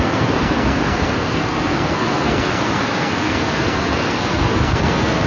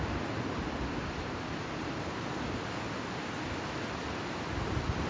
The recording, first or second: second